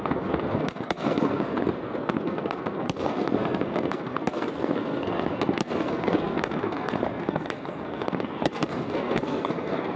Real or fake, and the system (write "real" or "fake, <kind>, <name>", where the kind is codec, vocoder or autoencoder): fake, codec, SNAC